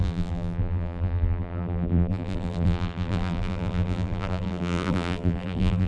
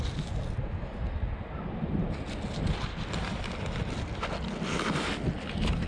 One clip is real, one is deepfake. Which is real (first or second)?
second